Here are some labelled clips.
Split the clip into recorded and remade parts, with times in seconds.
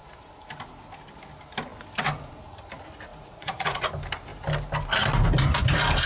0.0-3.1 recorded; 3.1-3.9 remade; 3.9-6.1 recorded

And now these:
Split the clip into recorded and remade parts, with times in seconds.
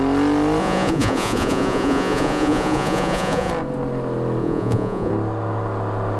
0.0-0.6 recorded; 0.6-3.5 remade; 3.5-4.4 recorded; 4.4-5.1 remade; 5.1-6.2 recorded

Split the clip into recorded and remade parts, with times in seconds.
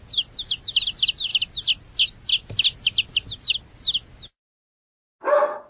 0.0-5.7 recorded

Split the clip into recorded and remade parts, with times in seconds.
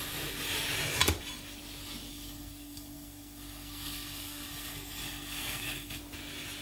0.0-2.1 recorded; 2.1-6.0 remade; 6.0-6.6 recorded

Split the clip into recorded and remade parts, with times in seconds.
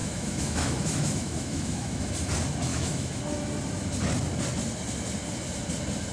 0.0-2.1 remade; 2.1-2.7 recorded; 2.7-3.2 remade; 3.2-6.1 recorded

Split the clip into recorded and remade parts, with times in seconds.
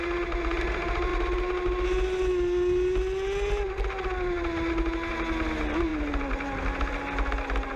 0.0-7.8 recorded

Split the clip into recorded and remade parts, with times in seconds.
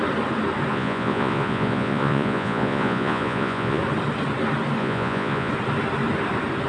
0.0-0.7 recorded; 0.7-3.8 remade; 3.8-4.8 recorded; 4.8-5.5 remade; 5.5-6.7 recorded